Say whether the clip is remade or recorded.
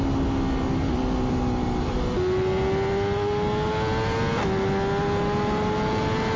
recorded